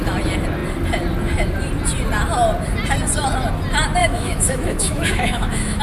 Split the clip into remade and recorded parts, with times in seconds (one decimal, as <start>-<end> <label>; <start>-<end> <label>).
0.0-4.0 recorded; 4.0-5.8 remade